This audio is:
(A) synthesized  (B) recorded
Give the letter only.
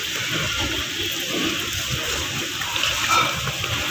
B